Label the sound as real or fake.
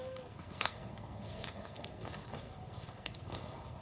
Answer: fake